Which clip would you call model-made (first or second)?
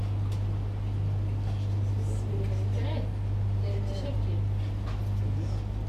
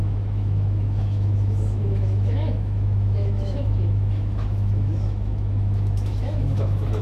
second